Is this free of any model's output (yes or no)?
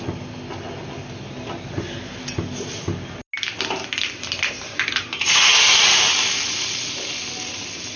yes